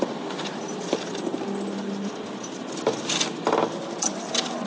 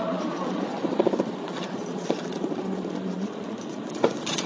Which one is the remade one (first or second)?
second